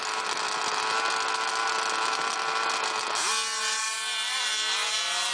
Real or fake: real